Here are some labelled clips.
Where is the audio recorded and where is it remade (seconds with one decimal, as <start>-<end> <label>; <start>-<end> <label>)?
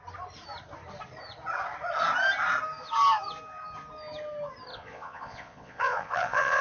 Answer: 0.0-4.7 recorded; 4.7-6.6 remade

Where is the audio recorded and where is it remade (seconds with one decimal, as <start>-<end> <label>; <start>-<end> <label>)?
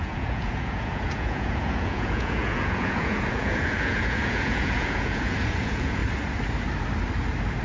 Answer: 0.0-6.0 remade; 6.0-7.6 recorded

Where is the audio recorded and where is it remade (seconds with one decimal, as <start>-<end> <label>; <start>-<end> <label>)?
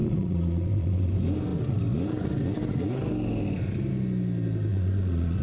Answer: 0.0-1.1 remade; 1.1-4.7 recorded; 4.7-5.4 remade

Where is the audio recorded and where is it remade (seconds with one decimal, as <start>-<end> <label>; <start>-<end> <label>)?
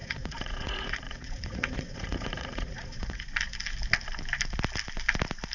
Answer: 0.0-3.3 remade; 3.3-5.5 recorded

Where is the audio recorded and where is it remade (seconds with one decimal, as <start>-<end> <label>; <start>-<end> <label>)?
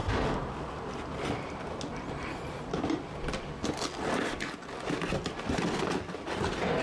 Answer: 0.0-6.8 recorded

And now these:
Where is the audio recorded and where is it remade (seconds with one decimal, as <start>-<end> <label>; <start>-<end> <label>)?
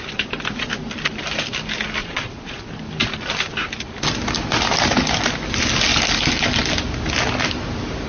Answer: 0.0-2.0 recorded; 2.0-2.6 remade; 2.6-8.1 recorded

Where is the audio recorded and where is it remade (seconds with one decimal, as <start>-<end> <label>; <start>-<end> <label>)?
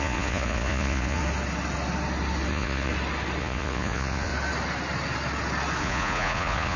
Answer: 0.0-1.2 remade; 1.2-2.5 recorded; 2.5-2.9 remade; 2.9-3.4 recorded; 3.4-4.3 remade; 4.3-5.8 recorded; 5.8-6.8 remade